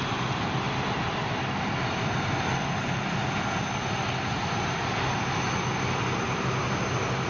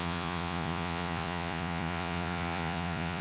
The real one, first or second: first